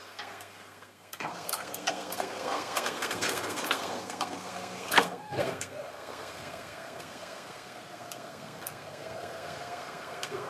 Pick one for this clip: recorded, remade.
remade